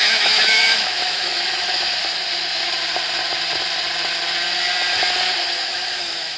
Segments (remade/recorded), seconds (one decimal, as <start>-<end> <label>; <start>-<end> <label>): 0.0-2.0 remade; 2.0-5.6 recorded; 5.6-6.4 remade